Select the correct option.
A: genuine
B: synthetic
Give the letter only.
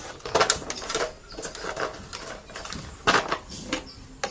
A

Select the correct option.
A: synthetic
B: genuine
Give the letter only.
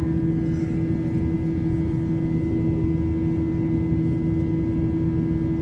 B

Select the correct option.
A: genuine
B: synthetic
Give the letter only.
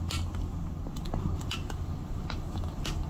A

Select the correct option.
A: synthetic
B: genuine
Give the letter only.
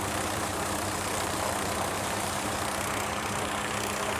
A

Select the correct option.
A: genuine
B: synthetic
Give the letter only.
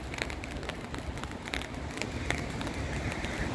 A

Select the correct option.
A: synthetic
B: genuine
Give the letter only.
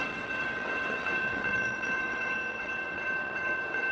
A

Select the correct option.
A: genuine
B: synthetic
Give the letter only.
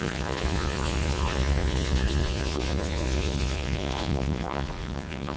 B